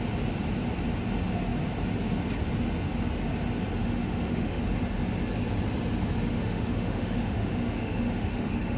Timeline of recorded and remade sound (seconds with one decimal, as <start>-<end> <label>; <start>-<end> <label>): 0.0-3.8 recorded; 3.8-4.6 remade; 4.6-6.3 recorded; 6.3-8.8 remade